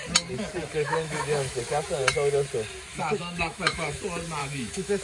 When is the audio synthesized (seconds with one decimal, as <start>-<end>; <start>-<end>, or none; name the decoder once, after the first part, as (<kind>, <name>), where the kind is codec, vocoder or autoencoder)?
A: 0.7-1.6 (autoencoder, DAC-VAE); 2.9-4.0; 4.4-5.0